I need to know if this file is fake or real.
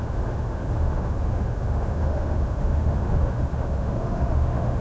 fake